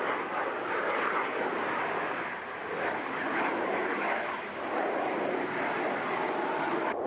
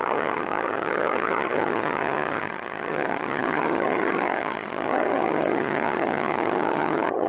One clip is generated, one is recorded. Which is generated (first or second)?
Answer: second